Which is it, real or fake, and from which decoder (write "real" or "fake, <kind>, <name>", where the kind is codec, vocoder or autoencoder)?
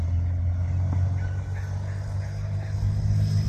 real